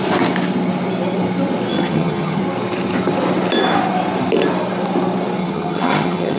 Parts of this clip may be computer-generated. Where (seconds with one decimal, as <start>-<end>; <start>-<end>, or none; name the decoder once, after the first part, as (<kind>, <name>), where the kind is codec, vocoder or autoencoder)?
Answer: 1.7-2.4 (vocoder, HiFi-GAN); 5.4-6.4